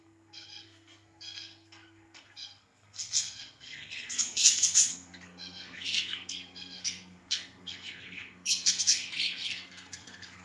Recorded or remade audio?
remade